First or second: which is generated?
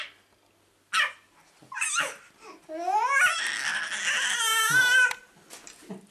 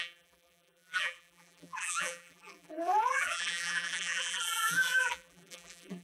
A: second